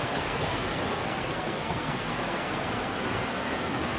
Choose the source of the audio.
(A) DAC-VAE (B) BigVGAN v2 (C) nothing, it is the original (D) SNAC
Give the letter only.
D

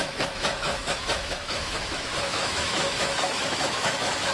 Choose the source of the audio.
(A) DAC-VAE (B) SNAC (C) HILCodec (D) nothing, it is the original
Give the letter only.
A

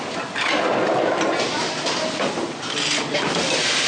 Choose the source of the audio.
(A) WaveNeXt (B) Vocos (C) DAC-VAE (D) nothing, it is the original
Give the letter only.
D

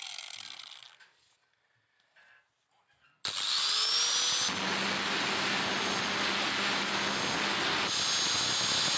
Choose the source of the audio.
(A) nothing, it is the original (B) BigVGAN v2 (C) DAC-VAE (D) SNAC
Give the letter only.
A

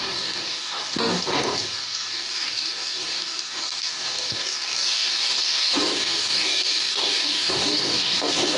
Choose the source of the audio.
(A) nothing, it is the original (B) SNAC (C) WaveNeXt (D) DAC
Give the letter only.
D